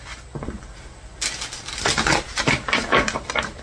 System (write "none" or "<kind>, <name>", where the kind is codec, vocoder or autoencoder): none